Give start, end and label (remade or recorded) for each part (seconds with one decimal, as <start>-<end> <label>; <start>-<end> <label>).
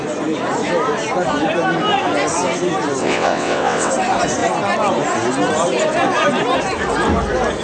0.0-3.0 recorded; 3.0-3.9 remade; 3.9-7.6 recorded